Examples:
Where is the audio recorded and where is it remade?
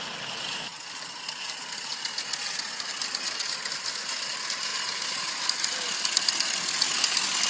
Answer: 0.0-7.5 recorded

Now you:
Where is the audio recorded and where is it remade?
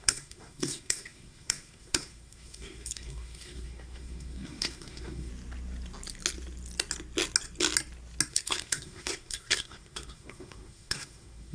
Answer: 0.0-5.3 remade; 5.3-8.3 recorded; 8.3-11.5 remade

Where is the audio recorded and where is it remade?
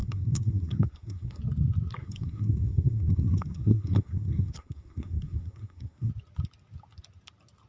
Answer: 0.0-1.4 remade; 1.4-2.0 recorded; 2.0-6.1 remade; 6.1-7.7 recorded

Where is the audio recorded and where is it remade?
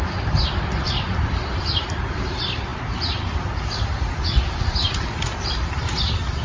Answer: 0.0-6.4 remade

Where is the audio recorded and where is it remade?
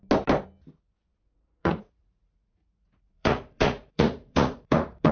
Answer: 0.0-1.6 recorded; 1.6-5.1 remade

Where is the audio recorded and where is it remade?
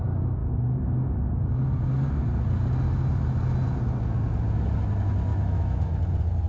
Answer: 0.0-5.3 recorded; 5.3-5.9 remade; 5.9-6.5 recorded